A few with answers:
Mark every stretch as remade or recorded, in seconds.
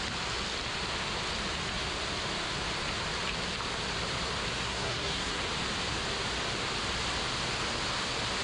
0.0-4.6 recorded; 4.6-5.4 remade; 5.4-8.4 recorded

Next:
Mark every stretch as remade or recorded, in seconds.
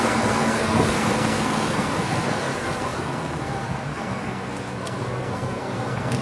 0.0-6.2 remade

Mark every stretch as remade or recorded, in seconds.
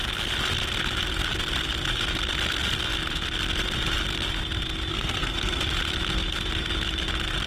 0.0-4.9 recorded; 4.9-5.6 remade; 5.6-7.5 recorded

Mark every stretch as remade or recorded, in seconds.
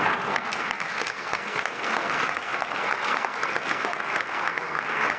0.0-5.2 remade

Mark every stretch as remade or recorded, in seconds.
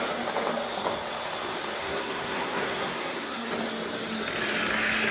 0.0-1.8 recorded; 1.8-3.5 remade; 3.5-5.1 recorded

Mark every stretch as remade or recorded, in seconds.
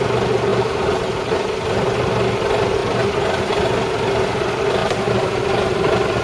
0.0-6.2 recorded